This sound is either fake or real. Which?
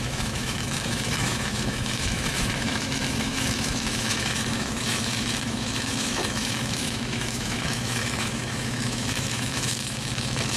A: fake